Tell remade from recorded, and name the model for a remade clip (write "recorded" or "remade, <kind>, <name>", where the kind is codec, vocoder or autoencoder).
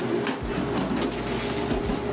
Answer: recorded